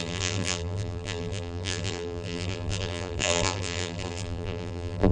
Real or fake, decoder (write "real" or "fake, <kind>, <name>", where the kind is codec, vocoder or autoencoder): fake, vocoder, BigVGAN v2